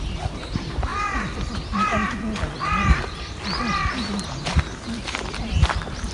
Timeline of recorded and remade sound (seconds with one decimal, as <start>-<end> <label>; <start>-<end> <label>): 0.0-0.9 remade; 0.9-4.6 recorded; 4.6-6.1 remade